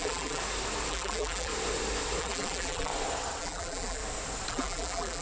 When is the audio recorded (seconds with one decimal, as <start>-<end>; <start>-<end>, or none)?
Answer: 0.4-0.9; 1.5-2.2; 2.9-3.4; 4.0-4.5